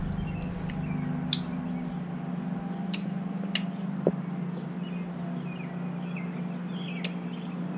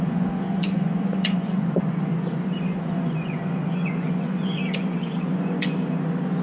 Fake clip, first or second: second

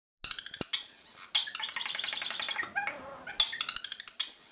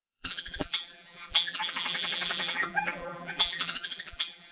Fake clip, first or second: second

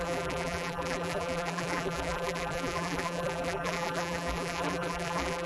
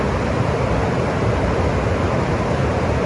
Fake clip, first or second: first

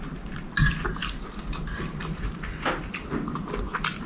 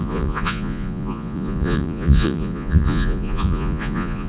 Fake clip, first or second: second